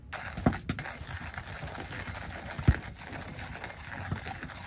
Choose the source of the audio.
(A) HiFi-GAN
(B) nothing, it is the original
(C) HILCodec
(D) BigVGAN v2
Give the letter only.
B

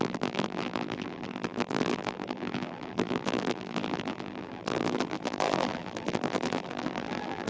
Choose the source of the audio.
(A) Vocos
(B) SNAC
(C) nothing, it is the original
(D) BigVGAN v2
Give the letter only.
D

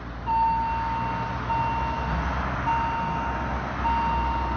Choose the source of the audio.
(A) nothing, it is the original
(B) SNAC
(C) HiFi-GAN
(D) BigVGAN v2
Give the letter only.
A